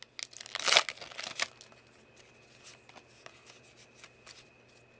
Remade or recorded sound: recorded